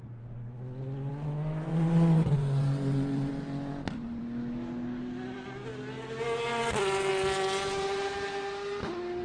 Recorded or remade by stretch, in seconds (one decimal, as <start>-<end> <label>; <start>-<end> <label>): 0.0-1.7 recorded; 1.7-3.3 remade; 3.3-9.2 recorded